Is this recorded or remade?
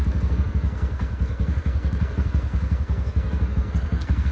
remade